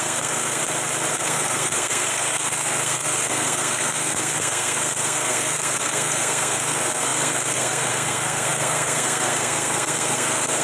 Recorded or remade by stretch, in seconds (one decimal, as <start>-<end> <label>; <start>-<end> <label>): 0.0-0.6 remade; 0.6-1.1 recorded; 1.1-10.6 remade

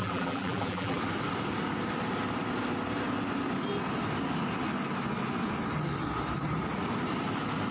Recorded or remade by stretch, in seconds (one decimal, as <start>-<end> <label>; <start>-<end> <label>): 0.0-1.0 remade; 1.0-7.7 recorded

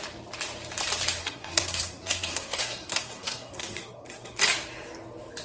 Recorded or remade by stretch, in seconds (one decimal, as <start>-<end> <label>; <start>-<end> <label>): 0.0-1.2 recorded; 1.2-4.4 remade; 4.4-5.4 recorded

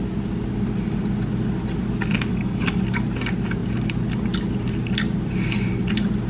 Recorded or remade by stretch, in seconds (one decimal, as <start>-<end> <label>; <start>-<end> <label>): 0.0-2.3 recorded; 2.3-2.8 remade; 2.8-6.3 recorded

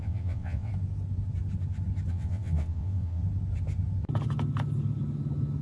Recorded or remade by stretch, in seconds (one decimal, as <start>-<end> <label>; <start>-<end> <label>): 0.0-0.7 remade; 0.7-2.1 recorded; 2.1-3.2 remade; 3.2-5.6 recorded

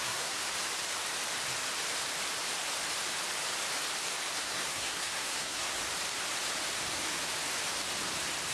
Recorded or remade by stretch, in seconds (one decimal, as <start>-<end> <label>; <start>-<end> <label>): 0.0-0.4 remade; 0.4-4.4 recorded; 4.4-5.8 remade; 5.8-8.5 recorded